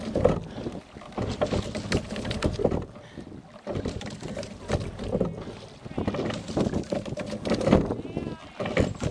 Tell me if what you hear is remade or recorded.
recorded